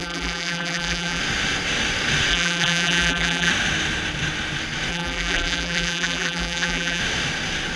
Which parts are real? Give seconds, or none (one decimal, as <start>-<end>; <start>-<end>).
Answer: 1.2-2.3; 3.5-4.9; 7.0-7.8